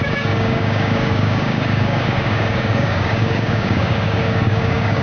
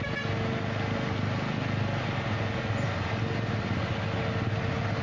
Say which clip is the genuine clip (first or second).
second